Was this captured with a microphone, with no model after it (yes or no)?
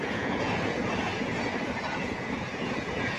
no